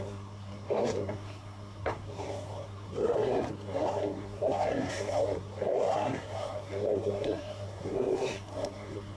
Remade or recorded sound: remade